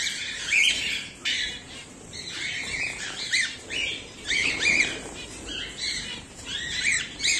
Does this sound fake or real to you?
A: fake